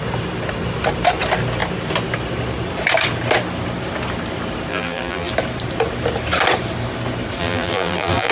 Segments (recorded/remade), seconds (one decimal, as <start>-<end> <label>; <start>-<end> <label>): 0.0-4.7 recorded; 4.7-5.3 remade; 5.3-7.4 recorded; 7.4-8.3 remade